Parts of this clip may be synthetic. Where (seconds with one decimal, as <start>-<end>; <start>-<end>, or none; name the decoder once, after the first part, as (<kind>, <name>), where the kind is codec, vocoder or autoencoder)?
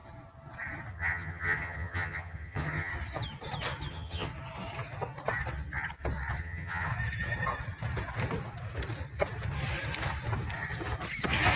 0.9-2.9 (vocoder, HiFi-GAN); 3.9-4.3; 6.4-6.9